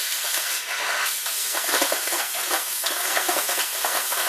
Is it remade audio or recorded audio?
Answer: remade